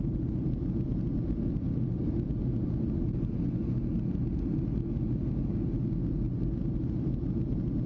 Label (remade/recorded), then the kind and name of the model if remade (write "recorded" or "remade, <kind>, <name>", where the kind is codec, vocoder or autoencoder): recorded